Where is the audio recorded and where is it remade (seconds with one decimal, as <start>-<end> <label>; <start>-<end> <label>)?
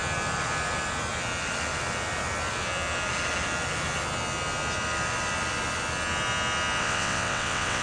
0.0-6.8 recorded; 6.8-7.8 remade